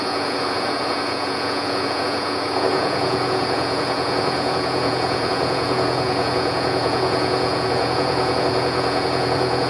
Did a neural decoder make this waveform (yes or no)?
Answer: yes